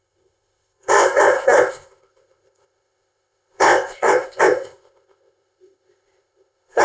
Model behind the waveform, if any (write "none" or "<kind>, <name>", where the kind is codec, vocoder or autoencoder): codec, ZipCodec